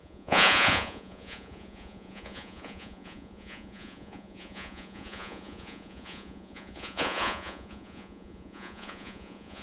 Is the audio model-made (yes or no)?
yes